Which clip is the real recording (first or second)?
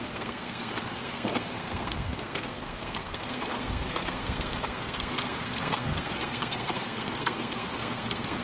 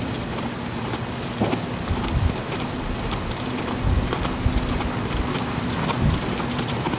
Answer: second